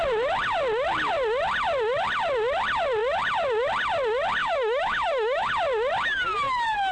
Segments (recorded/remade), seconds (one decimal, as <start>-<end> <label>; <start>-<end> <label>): 0.0-4.4 recorded; 4.4-5.5 remade; 5.5-6.9 recorded